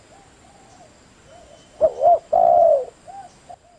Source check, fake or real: real